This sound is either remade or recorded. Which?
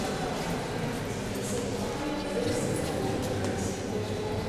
recorded